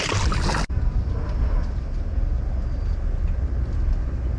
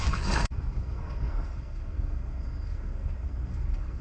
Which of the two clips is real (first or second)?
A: first